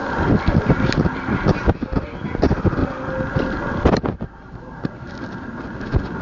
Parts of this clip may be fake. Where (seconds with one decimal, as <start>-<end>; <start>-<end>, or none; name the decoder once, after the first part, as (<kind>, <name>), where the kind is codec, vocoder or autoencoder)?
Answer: none